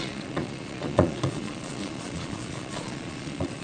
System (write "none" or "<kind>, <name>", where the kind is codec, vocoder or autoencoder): vocoder, Vocos